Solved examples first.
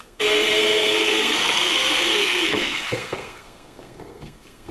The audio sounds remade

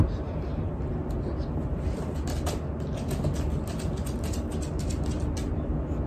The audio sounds recorded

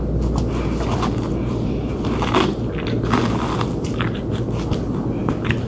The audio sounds recorded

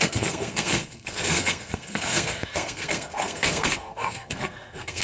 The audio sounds remade